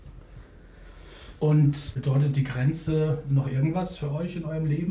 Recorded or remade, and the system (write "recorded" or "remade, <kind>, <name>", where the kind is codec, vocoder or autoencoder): recorded